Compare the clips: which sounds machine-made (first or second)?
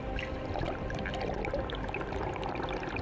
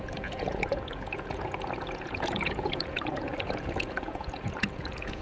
second